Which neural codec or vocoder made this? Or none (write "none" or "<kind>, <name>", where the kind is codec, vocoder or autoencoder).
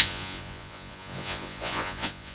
vocoder, Vocos